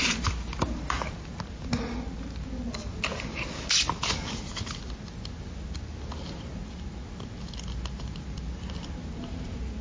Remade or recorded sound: recorded